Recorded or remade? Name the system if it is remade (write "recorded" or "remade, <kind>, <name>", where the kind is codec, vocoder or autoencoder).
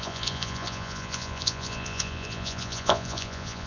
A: remade, vocoder, Vocos